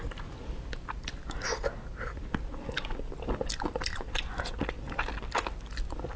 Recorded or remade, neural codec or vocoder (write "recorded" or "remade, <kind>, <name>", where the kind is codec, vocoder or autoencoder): recorded